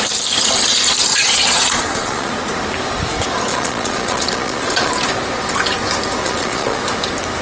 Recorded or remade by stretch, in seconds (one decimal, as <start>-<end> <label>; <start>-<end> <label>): 0.0-1.1 recorded; 1.1-2.3 remade; 2.3-3.5 recorded; 3.5-4.9 remade; 4.9-6.2 recorded; 6.2-6.8 remade; 6.8-7.4 recorded